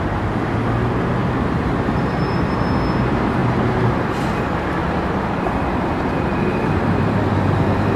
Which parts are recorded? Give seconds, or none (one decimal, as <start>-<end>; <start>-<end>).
0.0-1.2; 2.8-3.4; 4.1-4.8; 7.2-8.0